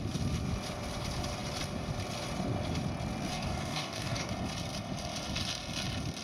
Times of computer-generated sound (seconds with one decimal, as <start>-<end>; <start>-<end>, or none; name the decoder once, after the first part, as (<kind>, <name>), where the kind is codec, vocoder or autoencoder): 3.3-4.3 (codec, DAC)